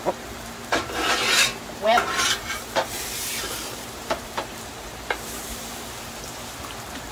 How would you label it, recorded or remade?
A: remade